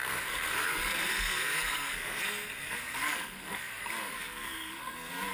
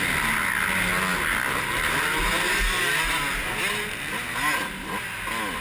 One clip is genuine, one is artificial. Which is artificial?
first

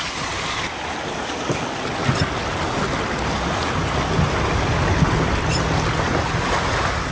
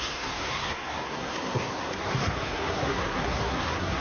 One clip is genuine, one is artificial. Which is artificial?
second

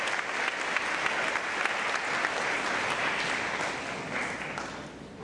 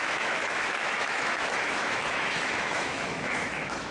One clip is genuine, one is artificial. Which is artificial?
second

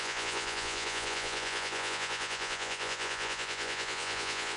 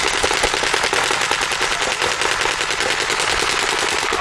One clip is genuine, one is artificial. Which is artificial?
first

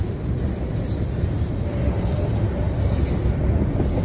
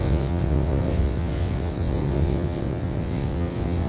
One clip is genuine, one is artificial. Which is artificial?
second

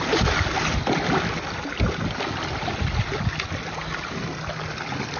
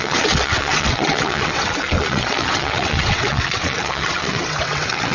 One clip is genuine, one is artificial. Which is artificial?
second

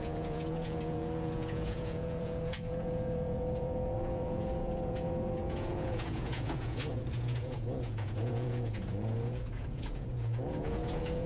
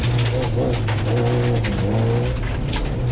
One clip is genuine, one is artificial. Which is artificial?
first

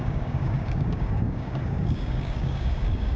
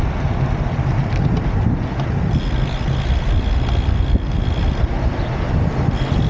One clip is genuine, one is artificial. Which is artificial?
first